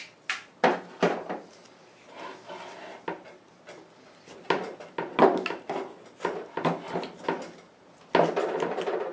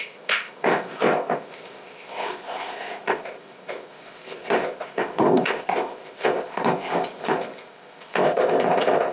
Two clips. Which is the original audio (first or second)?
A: first